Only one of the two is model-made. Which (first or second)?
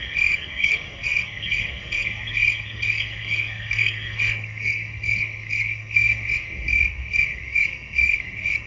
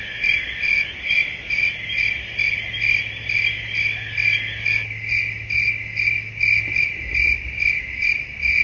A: first